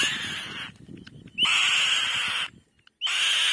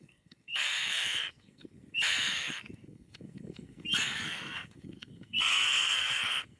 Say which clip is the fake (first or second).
second